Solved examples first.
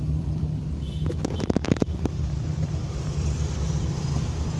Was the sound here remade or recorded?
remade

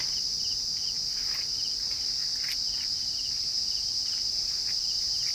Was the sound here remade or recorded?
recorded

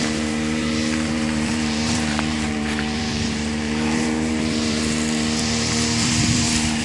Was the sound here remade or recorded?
remade